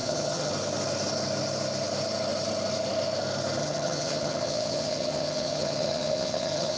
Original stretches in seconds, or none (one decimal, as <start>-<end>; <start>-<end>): 0.5-3.6

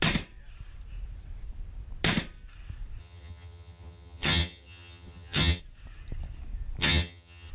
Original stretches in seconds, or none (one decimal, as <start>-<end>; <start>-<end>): 0.0-3.0; 5.6-6.8